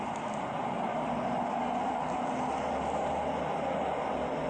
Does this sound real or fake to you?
real